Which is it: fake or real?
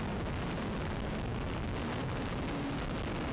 real